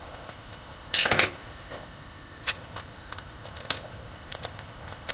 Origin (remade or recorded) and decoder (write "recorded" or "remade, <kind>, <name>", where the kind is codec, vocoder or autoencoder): remade, codec, ZipCodec